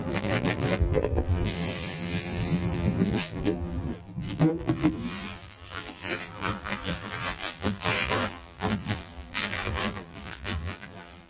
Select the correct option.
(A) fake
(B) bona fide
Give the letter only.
A